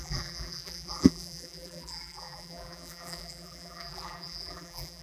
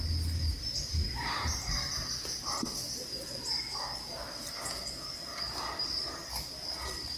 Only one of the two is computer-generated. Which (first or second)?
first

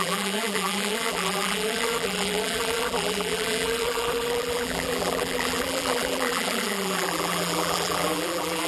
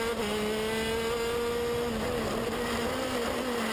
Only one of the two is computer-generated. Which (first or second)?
first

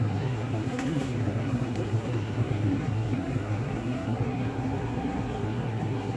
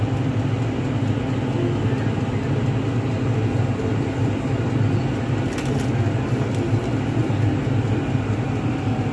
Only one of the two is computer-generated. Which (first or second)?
first